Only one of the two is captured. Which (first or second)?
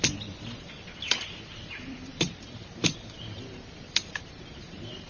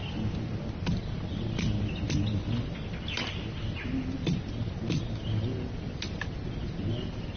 second